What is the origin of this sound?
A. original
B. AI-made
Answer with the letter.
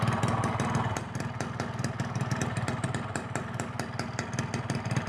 A